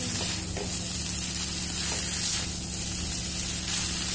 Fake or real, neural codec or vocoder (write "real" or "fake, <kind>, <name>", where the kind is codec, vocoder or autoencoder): real